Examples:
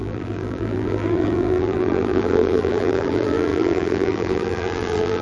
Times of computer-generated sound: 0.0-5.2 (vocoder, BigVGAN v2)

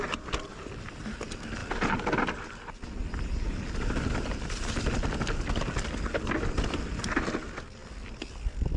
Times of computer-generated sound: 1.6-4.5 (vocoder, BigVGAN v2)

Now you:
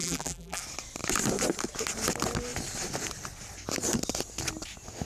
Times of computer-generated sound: 0.0-0.6 (vocoder, BigVGAN v2)

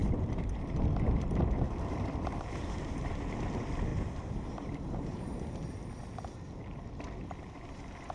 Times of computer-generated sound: 0.0-3.1 (vocoder, BigVGAN v2); 3.9-5.4

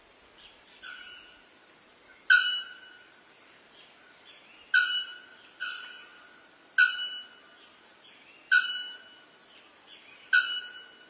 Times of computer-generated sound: none

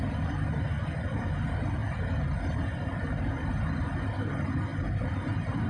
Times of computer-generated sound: 4.7-5.7 (vocoder, BigVGAN v2)

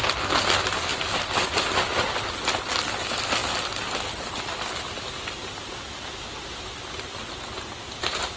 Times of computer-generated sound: 0.9-2.0 (vocoder, BigVGAN v2)

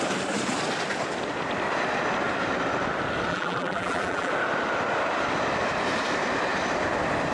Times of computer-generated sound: 3.3-4.3 (vocoder, BigVGAN v2)